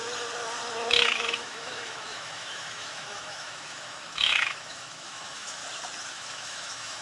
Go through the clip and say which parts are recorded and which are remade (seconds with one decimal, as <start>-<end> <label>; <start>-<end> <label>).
0.0-0.9 recorded; 0.9-5.6 remade; 5.6-6.1 recorded; 6.1-7.0 remade